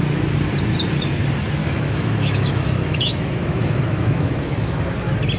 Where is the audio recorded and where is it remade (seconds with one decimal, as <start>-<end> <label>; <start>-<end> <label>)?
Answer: 0.0-1.6 recorded; 1.6-4.8 remade; 4.8-5.4 recorded